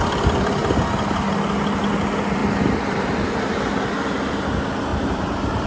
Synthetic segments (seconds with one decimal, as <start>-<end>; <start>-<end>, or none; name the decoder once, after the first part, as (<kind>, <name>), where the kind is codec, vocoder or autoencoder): 2.4-4.4 (vocoder, BigVGAN v2); 4.9-5.7